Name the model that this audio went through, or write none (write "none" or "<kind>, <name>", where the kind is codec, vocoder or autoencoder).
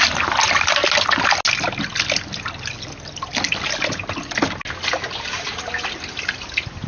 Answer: none